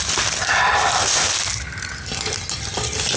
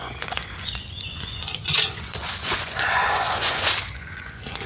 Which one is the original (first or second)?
first